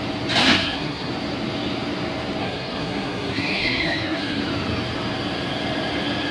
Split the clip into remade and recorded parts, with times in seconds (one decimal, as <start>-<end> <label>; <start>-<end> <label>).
0.0-0.4 recorded; 0.4-1.1 remade; 1.1-2.4 recorded; 2.4-4.4 remade; 4.4-6.3 recorded